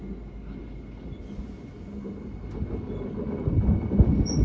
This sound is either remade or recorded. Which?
recorded